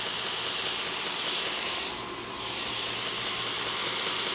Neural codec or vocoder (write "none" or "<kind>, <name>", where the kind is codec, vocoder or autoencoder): none